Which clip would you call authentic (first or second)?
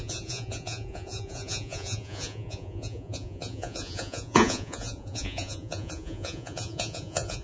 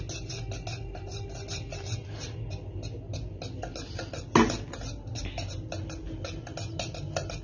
second